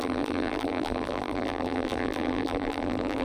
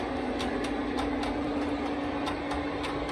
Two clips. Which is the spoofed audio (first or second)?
first